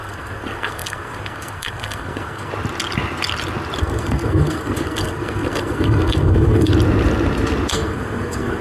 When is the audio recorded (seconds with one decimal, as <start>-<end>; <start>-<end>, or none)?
2.5-3.8; 6.7-7.7